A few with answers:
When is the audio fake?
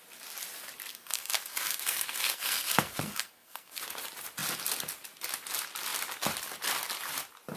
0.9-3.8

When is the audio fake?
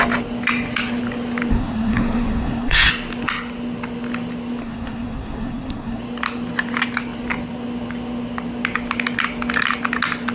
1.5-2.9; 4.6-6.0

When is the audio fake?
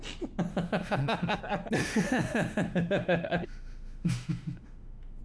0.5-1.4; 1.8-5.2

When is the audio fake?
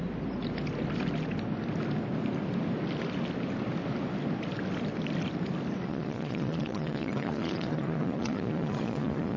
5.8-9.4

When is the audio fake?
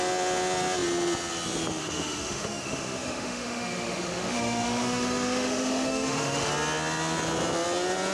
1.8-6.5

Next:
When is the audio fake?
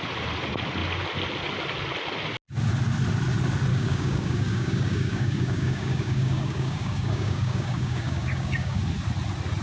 3.7-8.8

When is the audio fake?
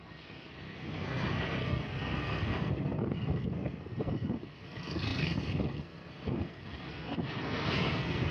0.0-8.3